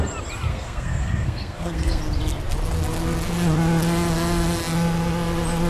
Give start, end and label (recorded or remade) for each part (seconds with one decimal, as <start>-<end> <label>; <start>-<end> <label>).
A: 0.0-0.5 recorded; 0.5-2.0 remade; 2.0-5.7 recorded